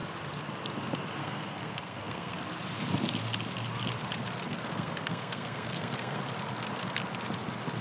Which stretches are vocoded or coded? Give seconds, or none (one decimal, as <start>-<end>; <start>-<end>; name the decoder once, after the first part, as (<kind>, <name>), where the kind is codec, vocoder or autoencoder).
1.2-2.4 (codec, SNAC); 4.5-6.2